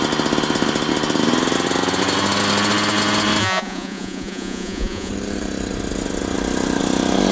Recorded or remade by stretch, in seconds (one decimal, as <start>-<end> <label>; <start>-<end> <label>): 0.0-3.4 recorded; 3.4-5.1 remade; 5.1-7.3 recorded

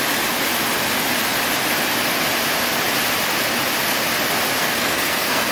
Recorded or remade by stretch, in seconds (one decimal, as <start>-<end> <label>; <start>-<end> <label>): 0.0-4.6 recorded; 4.6-5.5 remade

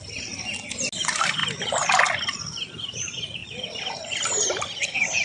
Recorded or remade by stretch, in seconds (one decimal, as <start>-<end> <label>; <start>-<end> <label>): 0.0-1.4 recorded; 1.4-2.0 remade; 2.0-3.4 recorded; 3.4-4.3 remade; 4.3-5.2 recorded

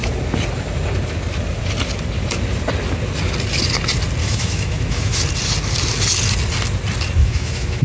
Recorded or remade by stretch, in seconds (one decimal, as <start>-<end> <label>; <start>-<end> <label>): 0.0-4.2 recorded; 4.2-5.2 remade; 5.2-7.2 recorded; 7.2-7.8 remade